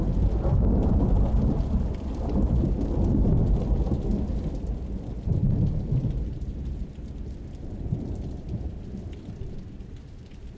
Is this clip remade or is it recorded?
recorded